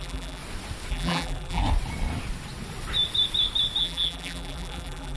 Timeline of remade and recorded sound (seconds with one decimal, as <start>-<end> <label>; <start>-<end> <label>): 0.0-0.4 remade; 0.4-0.9 recorded; 0.9-1.6 remade; 1.6-3.8 recorded; 3.8-5.2 remade